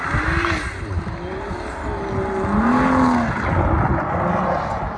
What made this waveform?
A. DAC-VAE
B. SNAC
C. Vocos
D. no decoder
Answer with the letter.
D